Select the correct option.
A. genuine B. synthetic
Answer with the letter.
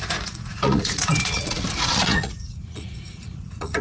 B